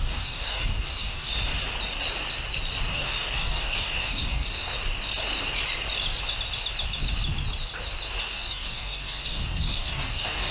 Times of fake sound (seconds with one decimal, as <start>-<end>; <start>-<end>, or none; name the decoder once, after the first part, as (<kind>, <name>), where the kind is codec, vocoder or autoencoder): 0.0-1.3 (codec, DAC); 2.9-4.7; 8.2-10.5